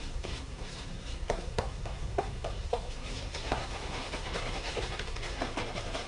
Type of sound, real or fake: fake